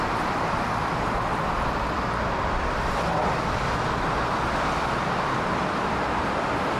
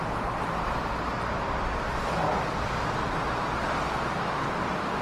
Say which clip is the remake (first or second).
first